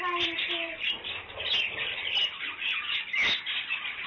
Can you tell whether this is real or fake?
real